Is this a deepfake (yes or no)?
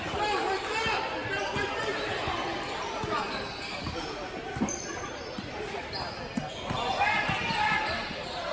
no